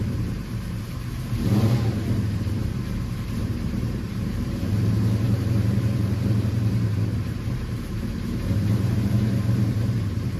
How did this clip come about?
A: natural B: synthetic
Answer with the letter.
B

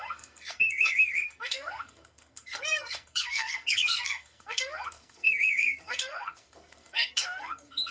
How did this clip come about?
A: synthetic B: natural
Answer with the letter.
A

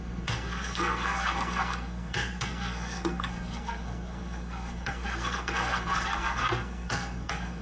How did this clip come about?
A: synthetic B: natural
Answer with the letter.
A